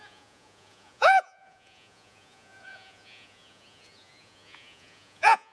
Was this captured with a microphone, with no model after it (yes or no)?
no